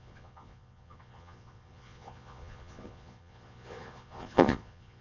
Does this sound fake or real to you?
fake